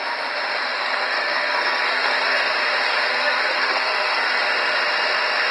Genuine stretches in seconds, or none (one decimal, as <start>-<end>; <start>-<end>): 0.0-0.6; 2.5-3.1; 4.4-5.5